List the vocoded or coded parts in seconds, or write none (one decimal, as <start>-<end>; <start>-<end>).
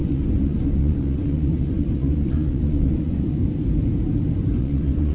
0.0-3.4; 4.6-5.1